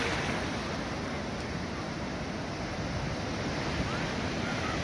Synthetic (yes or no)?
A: no